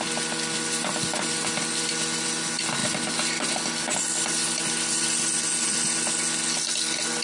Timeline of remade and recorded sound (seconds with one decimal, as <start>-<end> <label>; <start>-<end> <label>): 0.0-7.2 recorded